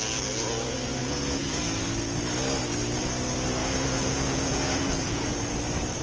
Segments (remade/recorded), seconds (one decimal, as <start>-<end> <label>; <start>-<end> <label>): 0.0-1.0 recorded; 1.0-1.6 remade; 1.6-3.6 recorded; 3.6-5.4 remade; 5.4-6.0 recorded